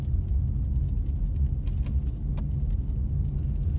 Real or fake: real